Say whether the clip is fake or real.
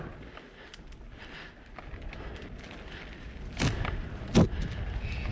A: real